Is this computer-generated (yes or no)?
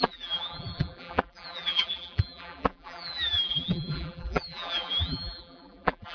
yes